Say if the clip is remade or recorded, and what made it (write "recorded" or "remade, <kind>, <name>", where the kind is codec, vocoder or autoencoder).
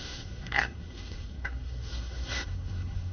remade, codec, SNAC